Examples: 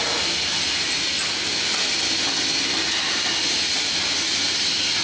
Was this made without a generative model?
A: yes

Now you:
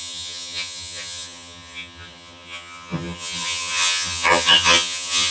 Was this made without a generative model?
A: no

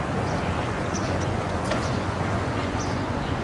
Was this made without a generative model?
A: no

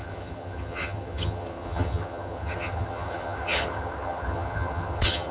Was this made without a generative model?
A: no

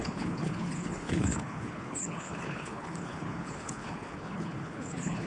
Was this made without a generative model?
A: no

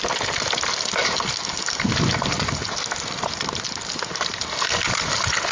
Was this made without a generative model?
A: yes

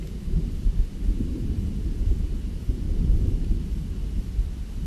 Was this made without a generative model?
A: no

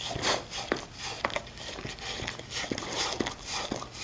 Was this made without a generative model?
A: yes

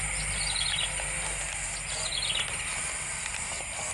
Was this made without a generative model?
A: yes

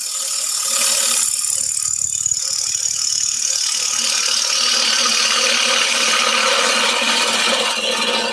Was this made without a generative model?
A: yes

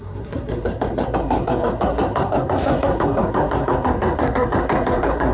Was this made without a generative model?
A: no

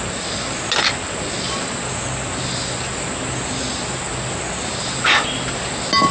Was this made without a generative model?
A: yes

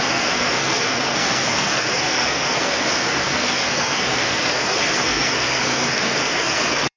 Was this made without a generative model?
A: no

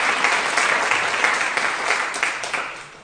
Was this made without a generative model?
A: yes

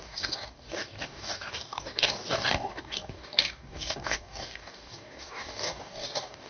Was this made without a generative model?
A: no